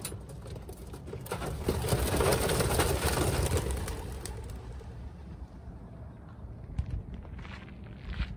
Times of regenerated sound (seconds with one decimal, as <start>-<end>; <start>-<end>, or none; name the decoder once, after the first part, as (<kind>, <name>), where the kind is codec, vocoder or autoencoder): none